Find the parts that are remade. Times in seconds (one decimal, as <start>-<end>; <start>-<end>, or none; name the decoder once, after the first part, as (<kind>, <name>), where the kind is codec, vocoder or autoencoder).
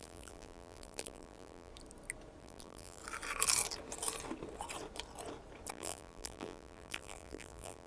0.0-1.7 (vocoder, BigVGAN v2); 2.4-3.0; 5.7-7.9